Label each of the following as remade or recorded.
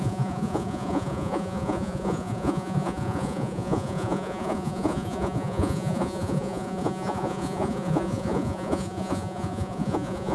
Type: remade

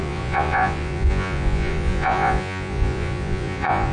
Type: remade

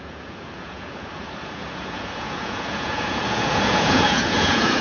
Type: remade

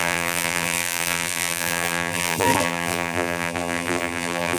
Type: remade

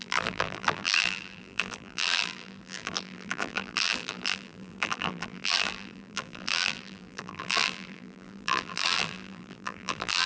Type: remade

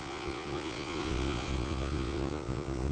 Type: remade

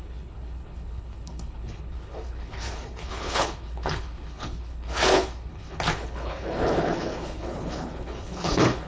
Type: remade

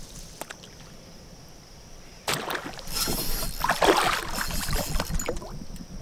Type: recorded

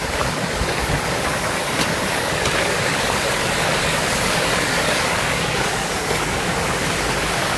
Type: remade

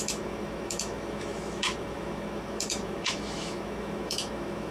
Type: remade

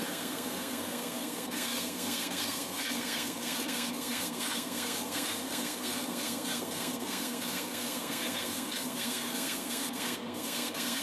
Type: remade